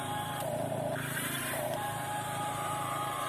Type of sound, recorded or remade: remade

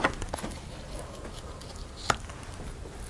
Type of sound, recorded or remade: recorded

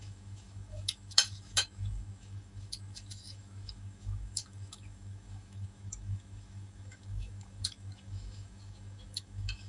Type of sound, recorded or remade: remade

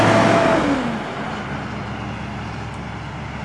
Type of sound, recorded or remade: recorded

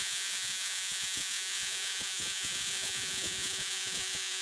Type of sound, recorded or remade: remade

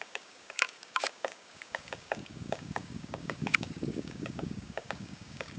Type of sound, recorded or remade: remade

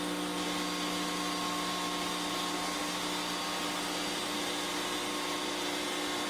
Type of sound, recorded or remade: recorded